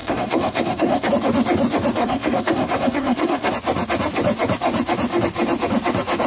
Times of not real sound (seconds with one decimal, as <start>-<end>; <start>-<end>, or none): 0.0-1.1; 2.0-3.5